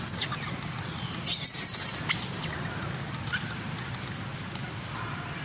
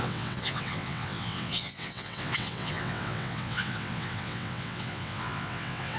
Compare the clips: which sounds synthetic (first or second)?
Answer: second